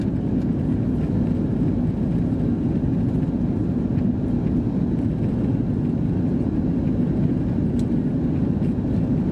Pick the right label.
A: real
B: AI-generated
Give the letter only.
A